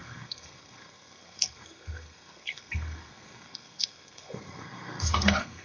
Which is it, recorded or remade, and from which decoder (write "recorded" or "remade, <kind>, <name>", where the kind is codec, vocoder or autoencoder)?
remade, codec, SNAC